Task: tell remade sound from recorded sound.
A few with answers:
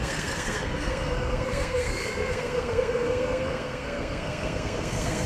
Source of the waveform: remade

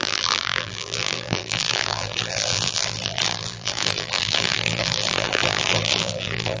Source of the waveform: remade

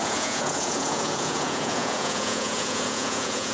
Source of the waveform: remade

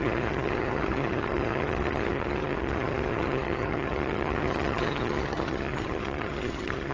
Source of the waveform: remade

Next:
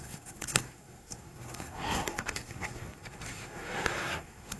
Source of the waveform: remade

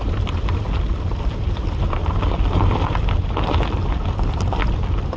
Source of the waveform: recorded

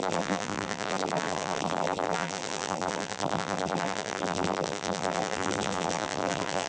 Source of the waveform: remade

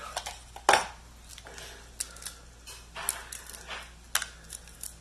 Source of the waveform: recorded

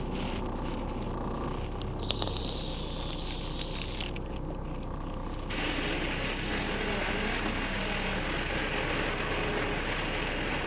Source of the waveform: recorded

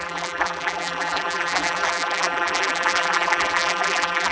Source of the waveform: remade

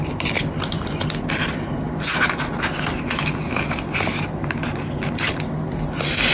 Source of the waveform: recorded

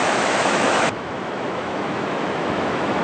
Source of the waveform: remade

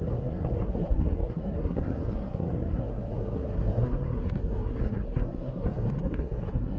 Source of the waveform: remade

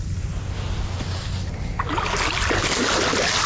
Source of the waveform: recorded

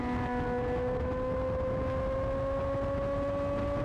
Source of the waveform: recorded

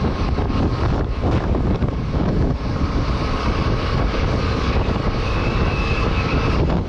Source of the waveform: remade